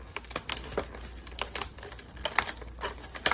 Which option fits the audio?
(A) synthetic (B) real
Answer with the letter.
B